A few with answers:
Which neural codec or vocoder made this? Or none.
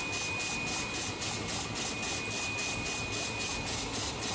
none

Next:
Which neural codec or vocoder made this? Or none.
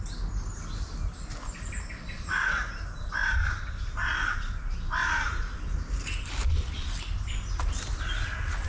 none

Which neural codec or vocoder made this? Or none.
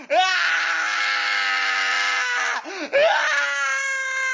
none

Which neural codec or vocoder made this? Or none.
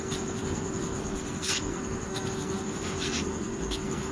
codec, SNAC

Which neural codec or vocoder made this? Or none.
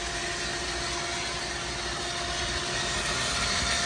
none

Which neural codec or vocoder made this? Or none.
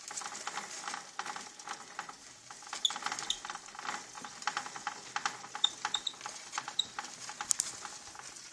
none